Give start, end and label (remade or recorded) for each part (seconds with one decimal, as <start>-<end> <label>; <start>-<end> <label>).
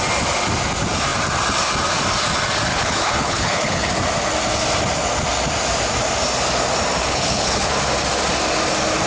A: 0.0-2.7 recorded; 2.7-3.9 remade; 3.9-7.0 recorded; 7.0-7.7 remade; 7.7-9.1 recorded